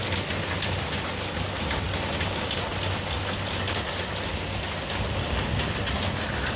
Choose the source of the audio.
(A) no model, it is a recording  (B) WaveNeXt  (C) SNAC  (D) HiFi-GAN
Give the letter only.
A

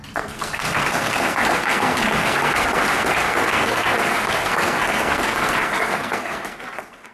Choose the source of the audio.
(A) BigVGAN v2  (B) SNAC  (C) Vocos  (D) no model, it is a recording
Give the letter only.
B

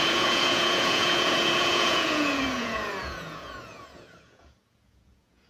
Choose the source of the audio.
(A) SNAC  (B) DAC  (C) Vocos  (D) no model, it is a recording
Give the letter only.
C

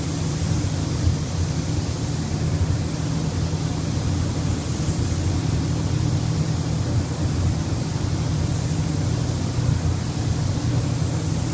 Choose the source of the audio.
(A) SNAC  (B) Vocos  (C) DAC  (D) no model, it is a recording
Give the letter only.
D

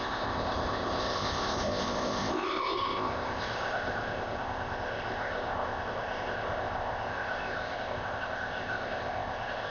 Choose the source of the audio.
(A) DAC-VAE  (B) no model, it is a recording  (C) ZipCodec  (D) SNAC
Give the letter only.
C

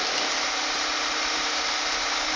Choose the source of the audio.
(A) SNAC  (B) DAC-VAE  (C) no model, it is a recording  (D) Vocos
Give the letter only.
C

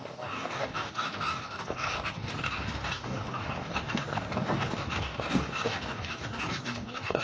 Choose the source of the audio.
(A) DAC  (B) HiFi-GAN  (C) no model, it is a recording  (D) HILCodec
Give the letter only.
A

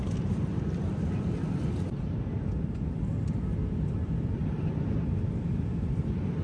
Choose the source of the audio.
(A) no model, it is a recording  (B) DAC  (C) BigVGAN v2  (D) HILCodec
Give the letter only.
C